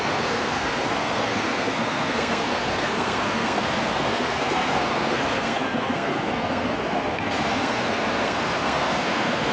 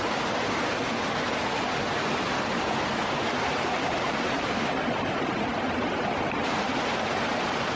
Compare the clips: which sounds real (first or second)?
second